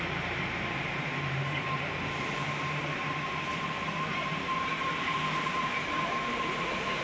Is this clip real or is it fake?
fake